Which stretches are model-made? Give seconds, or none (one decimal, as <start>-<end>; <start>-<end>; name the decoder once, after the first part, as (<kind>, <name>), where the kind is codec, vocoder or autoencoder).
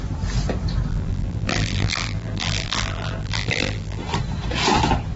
0.9-4.0 (vocoder, BigVGAN v2)